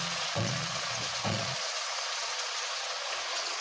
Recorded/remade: remade